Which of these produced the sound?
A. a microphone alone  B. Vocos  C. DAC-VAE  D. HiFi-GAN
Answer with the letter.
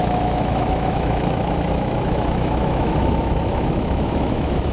C